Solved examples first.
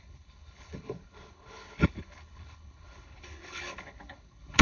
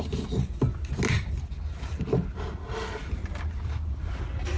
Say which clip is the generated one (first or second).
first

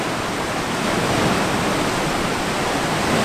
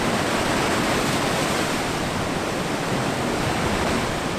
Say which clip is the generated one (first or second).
second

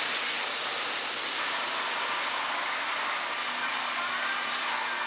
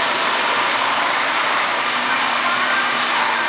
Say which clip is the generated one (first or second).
second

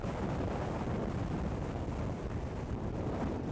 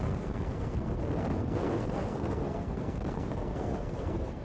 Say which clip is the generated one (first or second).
second